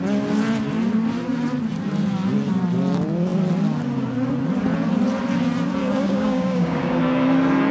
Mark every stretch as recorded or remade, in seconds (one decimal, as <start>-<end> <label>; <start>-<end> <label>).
0.0-5.8 recorded; 5.8-7.0 remade; 7.0-7.7 recorded

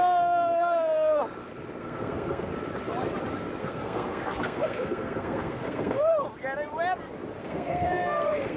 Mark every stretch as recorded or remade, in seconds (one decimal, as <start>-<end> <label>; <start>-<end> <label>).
0.0-1.2 remade; 1.2-1.8 recorded; 1.8-2.5 remade; 2.5-3.6 recorded; 3.6-6.1 remade; 6.1-7.4 recorded; 7.4-8.6 remade

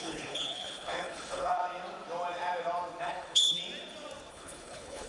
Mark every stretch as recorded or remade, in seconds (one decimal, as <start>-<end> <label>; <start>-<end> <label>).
0.0-1.6 remade; 1.6-3.0 recorded; 3.0-3.6 remade; 3.6-4.3 recorded; 4.3-5.1 remade

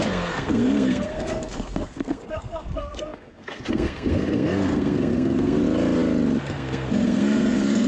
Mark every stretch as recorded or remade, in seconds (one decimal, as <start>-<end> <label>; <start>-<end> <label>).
0.0-5.6 remade; 5.6-6.4 recorded; 6.4-7.9 remade